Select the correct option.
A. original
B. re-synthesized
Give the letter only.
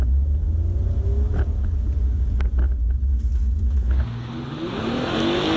A